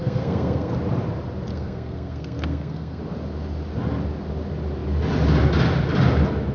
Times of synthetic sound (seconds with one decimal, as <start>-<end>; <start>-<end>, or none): 0.0-0.7; 1.5-3.0